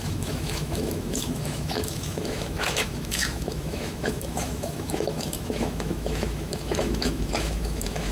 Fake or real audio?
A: fake